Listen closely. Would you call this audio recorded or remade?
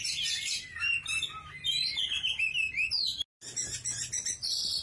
recorded